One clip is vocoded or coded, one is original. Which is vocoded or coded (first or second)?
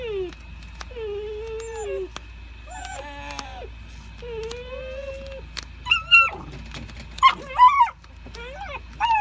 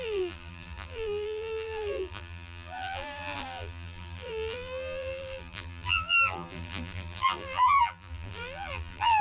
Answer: second